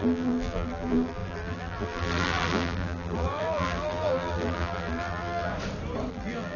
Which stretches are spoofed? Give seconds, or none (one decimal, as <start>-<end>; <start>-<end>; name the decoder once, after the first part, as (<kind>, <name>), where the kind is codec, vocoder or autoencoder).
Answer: 0.0-5.5 (vocoder, BigVGAN v2); 6.1-6.6